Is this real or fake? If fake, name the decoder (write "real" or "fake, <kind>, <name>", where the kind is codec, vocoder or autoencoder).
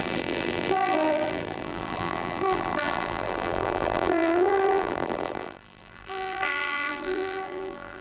fake, vocoder, BigVGAN v2